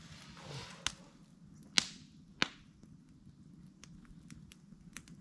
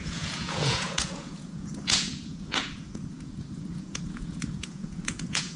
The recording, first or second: first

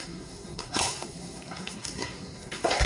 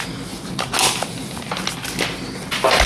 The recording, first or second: second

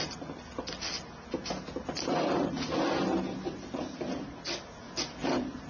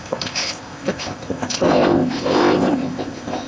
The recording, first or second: first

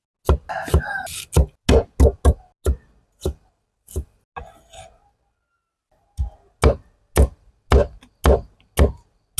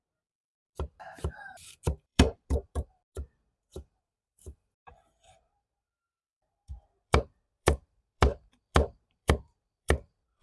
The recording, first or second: first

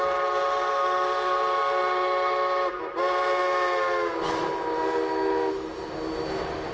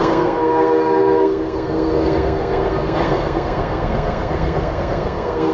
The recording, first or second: first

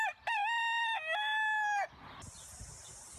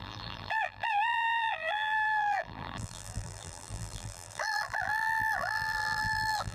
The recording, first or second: first